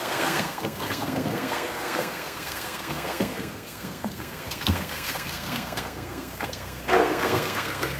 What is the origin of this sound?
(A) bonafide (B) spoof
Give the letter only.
B